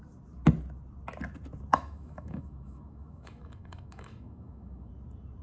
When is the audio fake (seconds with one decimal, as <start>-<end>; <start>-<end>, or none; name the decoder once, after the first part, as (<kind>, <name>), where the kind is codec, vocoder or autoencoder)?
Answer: 1.7-4.9 (autoencoder, DAC-VAE)